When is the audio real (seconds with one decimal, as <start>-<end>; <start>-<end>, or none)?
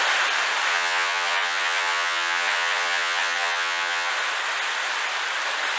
0.0-0.7; 4.1-5.8